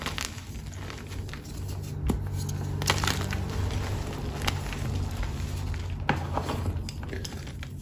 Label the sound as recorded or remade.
recorded